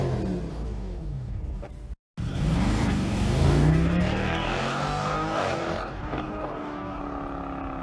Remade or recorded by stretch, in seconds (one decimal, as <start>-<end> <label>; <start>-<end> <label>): 0.0-0.5 recorded; 0.5-1.7 remade; 1.7-2.3 recorded; 2.3-7.0 remade; 7.0-7.8 recorded